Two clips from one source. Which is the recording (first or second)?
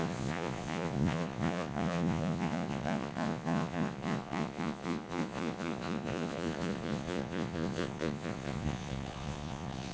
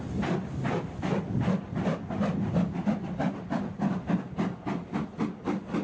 second